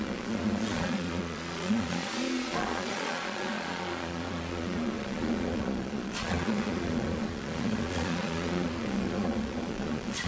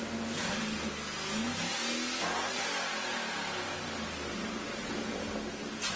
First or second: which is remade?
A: first